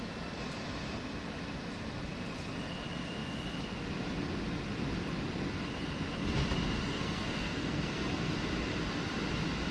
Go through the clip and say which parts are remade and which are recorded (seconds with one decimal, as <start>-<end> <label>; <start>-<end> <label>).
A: 0.0-6.9 recorded; 6.9-8.3 remade; 8.3-9.7 recorded